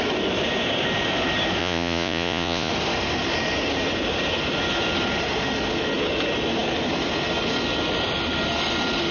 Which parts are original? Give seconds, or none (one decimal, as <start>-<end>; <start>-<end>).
0.0-1.6; 2.7-9.1